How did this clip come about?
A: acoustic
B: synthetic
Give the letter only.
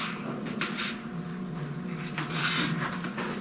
A